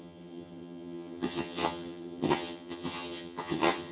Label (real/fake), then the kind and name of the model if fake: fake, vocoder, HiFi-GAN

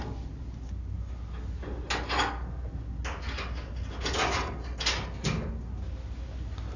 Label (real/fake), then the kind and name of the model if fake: real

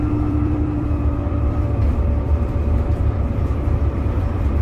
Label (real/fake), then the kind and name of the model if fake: fake, vocoder, BigVGAN v2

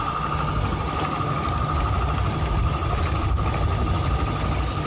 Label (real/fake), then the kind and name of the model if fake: real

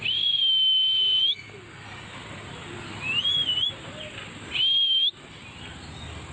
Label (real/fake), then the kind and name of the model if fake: real